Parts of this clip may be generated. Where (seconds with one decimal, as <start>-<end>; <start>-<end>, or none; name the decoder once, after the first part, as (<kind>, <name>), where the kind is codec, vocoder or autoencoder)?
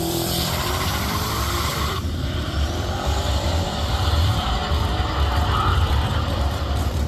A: 0.0-4.6 (vocoder, BigVGAN v2); 5.7-7.1